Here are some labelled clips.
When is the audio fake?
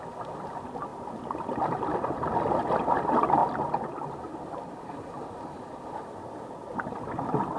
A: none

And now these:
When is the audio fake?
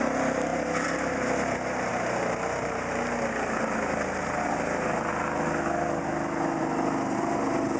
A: none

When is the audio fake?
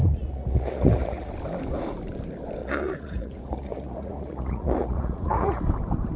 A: 0.0-1.3 (vocoder, Vocos); 2.6-5.6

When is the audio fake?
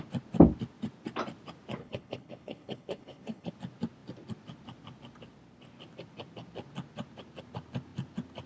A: 1.8-3.5 (codec, HILCodec)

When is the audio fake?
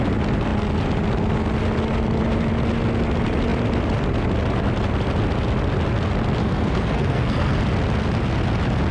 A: 6.4-7.6 (codec, SNAC)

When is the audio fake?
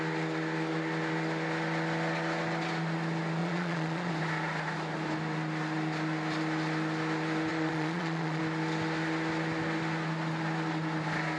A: 3.4-4.1 (vocoder, Vocos); 7.5-8.4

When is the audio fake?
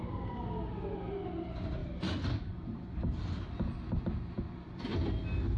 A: 1.8-4.8 (vocoder, BigVGAN v2)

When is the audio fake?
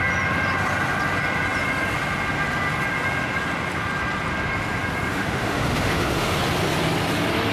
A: 5.1-6.4 (autoencoder, DAC-VAE)